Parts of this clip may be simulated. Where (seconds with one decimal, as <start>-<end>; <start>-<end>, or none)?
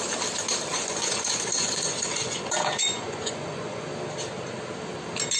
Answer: 0.7-3.9